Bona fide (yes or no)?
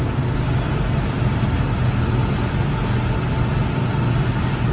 yes